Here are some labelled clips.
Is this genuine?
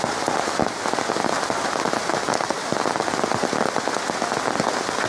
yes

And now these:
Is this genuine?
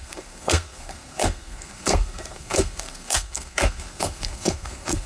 no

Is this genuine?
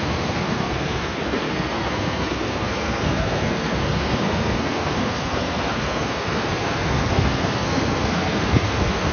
no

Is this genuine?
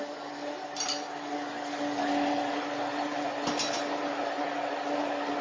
yes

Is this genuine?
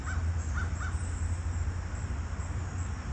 yes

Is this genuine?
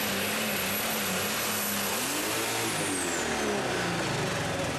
yes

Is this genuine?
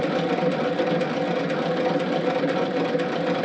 yes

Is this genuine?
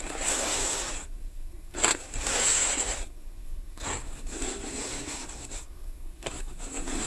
no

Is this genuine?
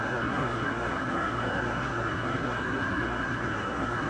no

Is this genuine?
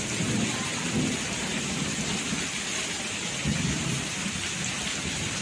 yes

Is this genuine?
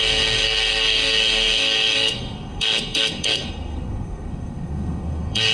no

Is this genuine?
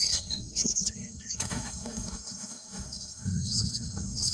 no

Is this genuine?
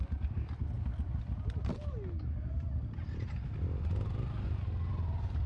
yes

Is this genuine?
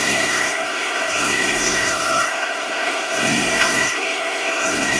no